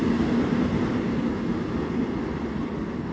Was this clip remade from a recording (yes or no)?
no